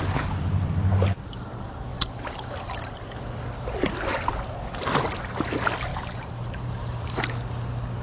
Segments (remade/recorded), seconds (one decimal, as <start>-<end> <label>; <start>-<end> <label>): 0.0-1.9 recorded; 1.9-2.9 remade; 2.9-5.9 recorded; 5.9-7.2 remade; 7.2-8.0 recorded